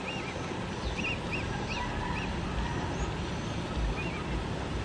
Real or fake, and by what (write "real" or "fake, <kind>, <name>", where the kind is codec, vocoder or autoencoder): real